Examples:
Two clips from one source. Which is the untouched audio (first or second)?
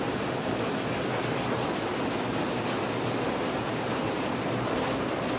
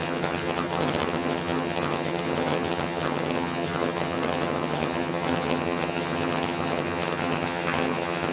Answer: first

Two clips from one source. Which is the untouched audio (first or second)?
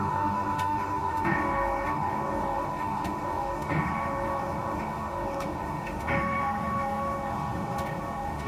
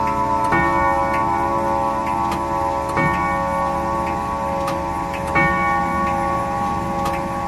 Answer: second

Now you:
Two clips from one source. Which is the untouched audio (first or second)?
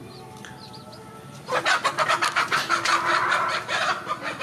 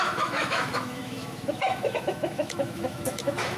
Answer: first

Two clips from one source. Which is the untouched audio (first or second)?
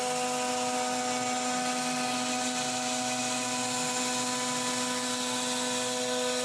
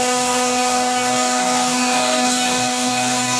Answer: first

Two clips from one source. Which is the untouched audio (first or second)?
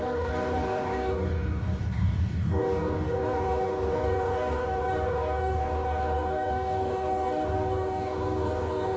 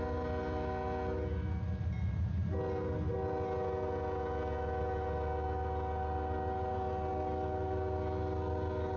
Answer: second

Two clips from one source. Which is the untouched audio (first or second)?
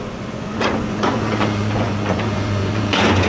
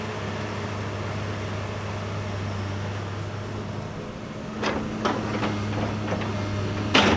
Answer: second